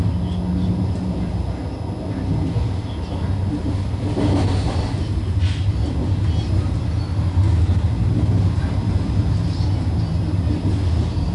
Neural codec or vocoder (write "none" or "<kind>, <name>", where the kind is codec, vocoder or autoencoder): none